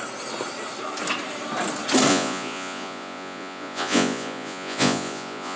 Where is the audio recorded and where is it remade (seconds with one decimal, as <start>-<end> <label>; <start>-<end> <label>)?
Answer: 0.0-2.1 recorded; 2.1-5.6 remade